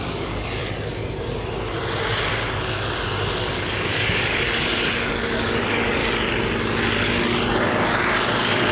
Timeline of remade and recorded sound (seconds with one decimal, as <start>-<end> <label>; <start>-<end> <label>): 0.0-0.6 remade; 0.6-3.4 recorded; 3.4-6.0 remade; 6.0-7.5 recorded; 7.5-8.7 remade